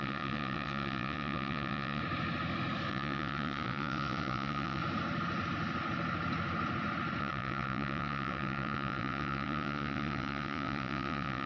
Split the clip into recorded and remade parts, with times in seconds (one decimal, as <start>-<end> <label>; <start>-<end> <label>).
0.0-2.0 remade; 2.0-2.9 recorded; 2.9-4.8 remade; 4.8-7.2 recorded; 7.2-11.5 remade